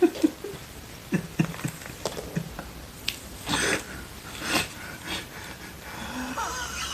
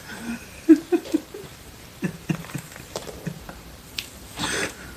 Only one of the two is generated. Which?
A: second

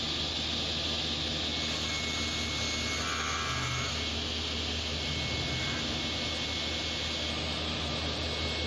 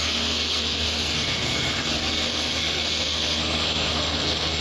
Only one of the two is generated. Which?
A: second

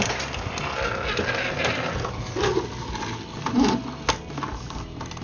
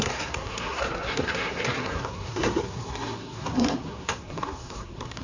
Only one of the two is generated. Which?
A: second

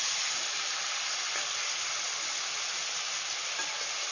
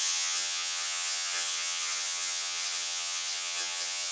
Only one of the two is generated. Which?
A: second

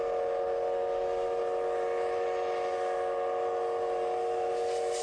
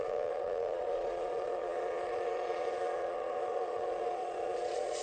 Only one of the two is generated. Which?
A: second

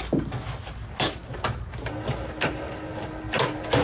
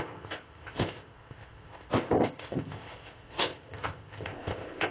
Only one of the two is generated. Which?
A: second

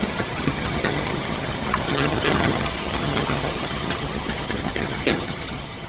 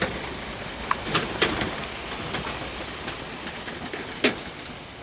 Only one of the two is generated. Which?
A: first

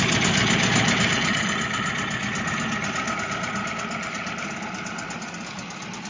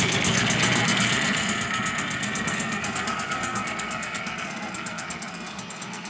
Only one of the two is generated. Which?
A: second